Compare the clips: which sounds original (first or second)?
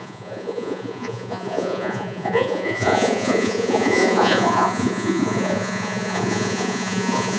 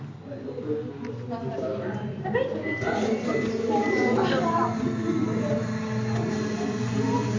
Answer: second